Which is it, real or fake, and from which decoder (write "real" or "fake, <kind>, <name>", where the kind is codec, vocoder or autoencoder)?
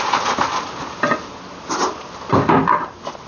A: real